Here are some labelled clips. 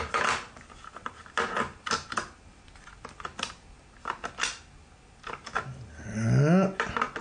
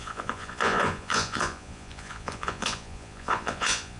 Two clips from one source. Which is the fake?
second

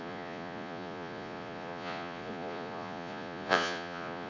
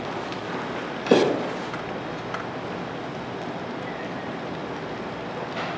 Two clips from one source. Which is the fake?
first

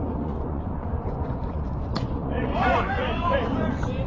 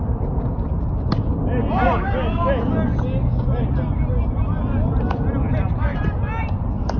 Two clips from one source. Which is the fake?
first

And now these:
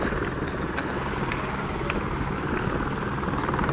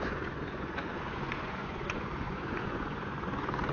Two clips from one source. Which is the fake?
second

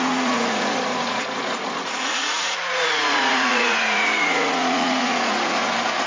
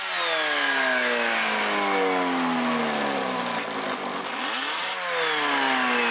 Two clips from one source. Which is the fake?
first